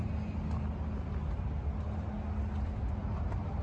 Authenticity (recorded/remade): recorded